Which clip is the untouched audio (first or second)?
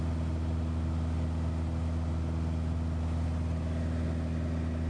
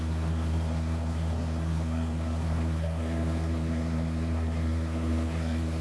first